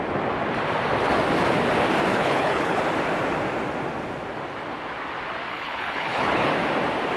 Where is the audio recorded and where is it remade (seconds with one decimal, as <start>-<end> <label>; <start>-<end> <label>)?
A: 0.0-2.1 recorded; 2.1-2.8 remade; 2.8-5.5 recorded; 5.5-6.5 remade; 6.5-7.2 recorded